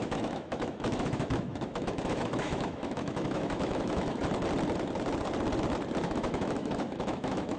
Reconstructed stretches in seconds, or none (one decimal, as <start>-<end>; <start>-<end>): 0.0-4.2; 6.0-7.6